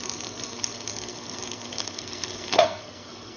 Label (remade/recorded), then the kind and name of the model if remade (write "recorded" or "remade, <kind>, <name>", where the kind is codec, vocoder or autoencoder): remade, codec, SNAC